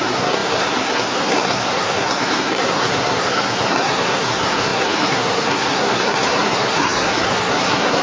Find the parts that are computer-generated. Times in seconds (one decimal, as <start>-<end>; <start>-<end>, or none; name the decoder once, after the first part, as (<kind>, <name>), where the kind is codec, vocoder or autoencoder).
0.0-8.0 (codec, SNAC)